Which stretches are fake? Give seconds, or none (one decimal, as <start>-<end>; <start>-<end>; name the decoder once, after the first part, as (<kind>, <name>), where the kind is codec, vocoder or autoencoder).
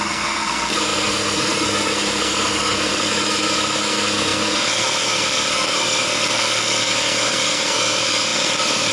0.0-8.9 (codec, SNAC)